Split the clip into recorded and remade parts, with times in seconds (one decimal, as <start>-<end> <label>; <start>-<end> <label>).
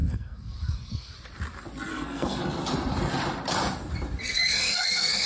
0.0-1.1 remade; 1.1-1.9 recorded; 1.9-2.4 remade; 2.4-4.2 recorded; 4.2-5.3 remade